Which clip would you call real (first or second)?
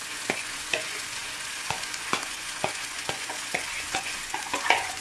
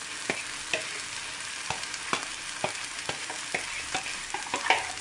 second